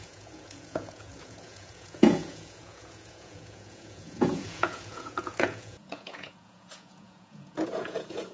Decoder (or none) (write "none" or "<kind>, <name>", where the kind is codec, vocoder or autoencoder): vocoder, Vocos